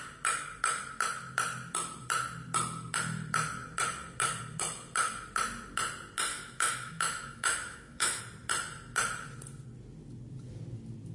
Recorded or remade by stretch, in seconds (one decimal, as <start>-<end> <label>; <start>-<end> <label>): 0.0-6.3 recorded; 6.3-8.2 remade; 8.2-11.1 recorded